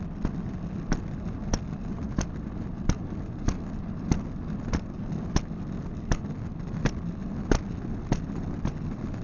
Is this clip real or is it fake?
real